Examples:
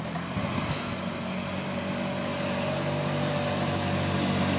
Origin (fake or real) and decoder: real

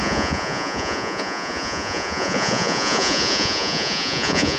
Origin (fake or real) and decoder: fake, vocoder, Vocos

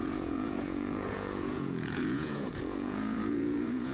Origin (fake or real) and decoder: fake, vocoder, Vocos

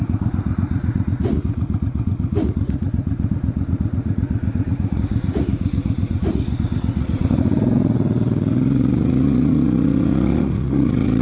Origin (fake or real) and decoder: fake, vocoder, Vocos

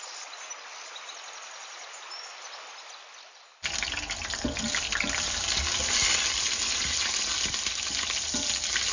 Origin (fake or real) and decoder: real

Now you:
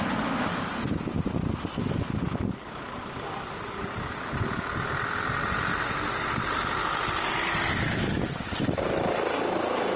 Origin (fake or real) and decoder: real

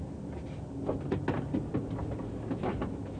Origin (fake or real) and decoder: real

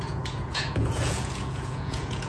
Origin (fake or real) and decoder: fake, vocoder, Vocos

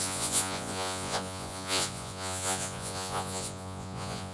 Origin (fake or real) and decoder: fake, vocoder, Vocos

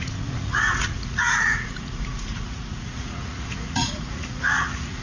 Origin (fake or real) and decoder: fake, vocoder, Vocos